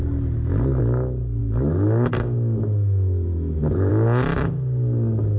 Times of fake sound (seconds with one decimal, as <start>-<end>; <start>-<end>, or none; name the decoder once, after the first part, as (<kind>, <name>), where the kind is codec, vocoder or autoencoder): 1.4-3.9 (autoencoder, DAC-VAE)